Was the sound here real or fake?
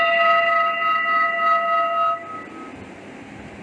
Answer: real